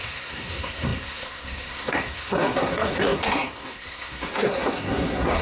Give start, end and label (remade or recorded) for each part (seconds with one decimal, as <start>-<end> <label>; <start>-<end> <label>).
0.0-5.4 remade